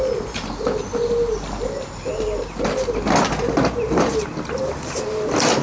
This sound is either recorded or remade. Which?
recorded